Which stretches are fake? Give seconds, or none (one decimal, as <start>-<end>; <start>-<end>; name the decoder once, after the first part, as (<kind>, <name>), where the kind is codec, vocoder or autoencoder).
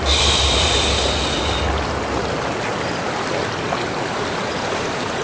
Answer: 0.0-1.2 (vocoder, BigVGAN v2); 4.1-5.2